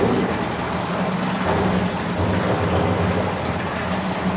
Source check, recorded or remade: recorded